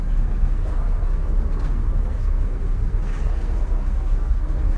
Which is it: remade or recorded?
remade